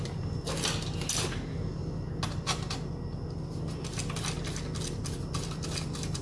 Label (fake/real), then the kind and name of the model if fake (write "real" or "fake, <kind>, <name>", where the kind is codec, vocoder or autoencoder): real